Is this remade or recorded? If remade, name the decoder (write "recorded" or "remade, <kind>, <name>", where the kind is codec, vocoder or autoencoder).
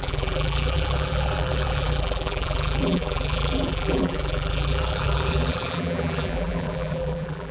remade, vocoder, BigVGAN v2